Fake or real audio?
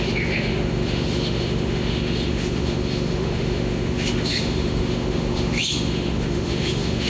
fake